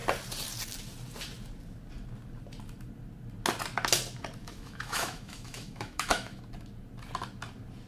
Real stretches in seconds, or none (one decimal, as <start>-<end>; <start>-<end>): 0.0-4.4; 6.4-7.9